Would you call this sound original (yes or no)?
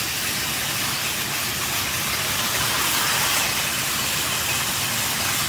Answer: yes